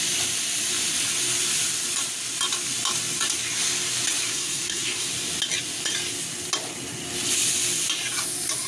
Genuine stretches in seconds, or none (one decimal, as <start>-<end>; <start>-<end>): 0.0-4.3; 5.1-8.7